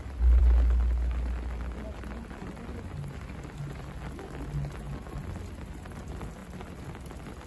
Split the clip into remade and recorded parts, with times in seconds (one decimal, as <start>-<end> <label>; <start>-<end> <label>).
0.0-7.5 recorded